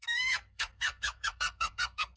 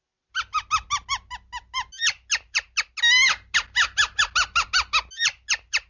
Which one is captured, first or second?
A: second